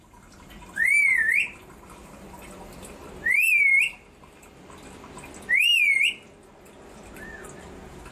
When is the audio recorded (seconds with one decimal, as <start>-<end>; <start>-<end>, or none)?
0.0-1.3; 5.8-8.1